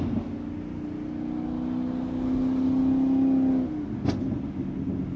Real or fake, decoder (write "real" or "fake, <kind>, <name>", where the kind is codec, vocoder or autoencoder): real